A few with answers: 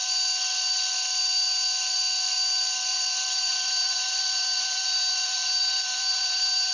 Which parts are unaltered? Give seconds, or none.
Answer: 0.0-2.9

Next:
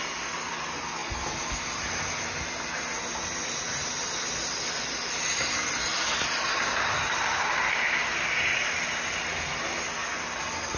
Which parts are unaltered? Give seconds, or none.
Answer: 0.0-10.8

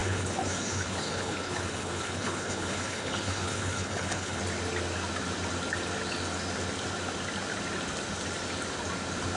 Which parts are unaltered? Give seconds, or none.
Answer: 4.4-9.4

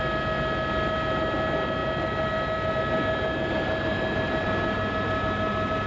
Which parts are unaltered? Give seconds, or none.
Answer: 0.0-5.9

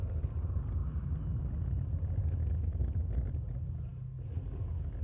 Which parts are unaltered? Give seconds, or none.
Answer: 0.0-5.0

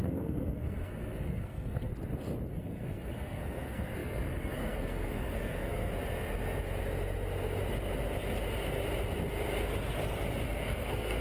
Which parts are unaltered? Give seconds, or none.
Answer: 1.9-2.5; 5.9-10.6